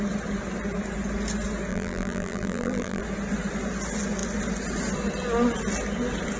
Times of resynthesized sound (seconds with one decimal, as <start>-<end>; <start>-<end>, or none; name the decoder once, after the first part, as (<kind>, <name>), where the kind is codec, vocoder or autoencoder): 1.7-3.0 (vocoder, BigVGAN v2)